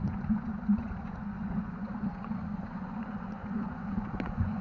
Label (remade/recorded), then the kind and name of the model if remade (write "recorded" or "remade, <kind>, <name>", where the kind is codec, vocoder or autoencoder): remade, vocoder, Vocos